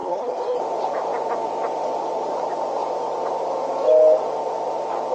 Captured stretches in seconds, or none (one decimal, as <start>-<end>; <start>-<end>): 0.6-5.1